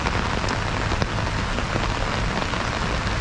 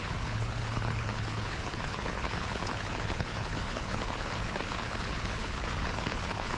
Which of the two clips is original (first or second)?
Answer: first